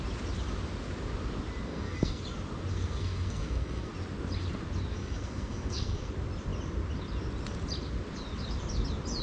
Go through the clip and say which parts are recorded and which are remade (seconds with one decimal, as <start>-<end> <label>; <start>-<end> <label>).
0.0-1.7 recorded; 1.7-2.2 remade; 2.2-2.7 recorded; 2.7-3.9 remade; 3.9-4.9 recorded; 4.9-6.1 remade; 6.1-9.2 recorded